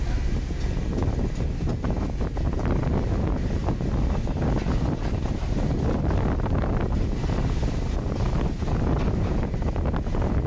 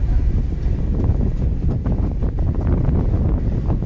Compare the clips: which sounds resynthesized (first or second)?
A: second